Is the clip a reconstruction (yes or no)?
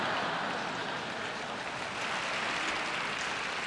no